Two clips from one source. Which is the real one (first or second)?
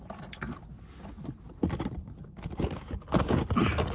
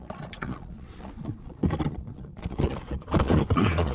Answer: first